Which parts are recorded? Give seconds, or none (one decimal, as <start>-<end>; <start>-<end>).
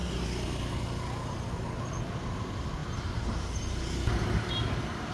0.0-5.1